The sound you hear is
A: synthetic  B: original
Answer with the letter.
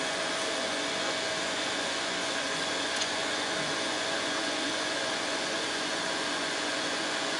A